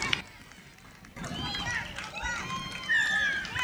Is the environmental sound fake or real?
real